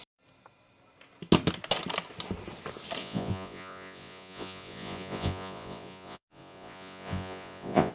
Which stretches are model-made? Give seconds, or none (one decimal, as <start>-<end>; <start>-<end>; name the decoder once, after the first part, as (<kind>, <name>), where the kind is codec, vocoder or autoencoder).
3.0-7.9 (vocoder, Vocos)